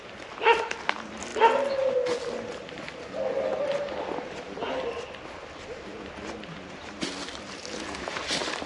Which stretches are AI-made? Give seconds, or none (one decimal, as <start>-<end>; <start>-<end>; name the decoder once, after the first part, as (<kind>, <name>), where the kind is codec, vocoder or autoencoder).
none